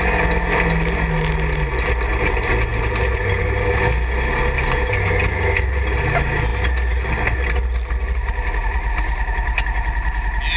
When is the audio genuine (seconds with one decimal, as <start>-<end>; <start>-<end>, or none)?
0.0-10.6